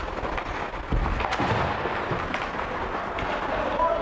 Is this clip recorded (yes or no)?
yes